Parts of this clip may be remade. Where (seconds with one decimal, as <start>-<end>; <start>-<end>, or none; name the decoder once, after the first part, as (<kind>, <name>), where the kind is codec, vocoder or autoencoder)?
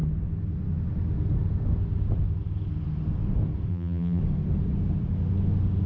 3.7-4.2 (vocoder, BigVGAN v2)